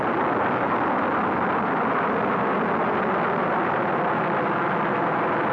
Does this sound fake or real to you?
real